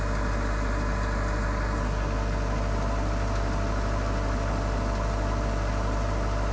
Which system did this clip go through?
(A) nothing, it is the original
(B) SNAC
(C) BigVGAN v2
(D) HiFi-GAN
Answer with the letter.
A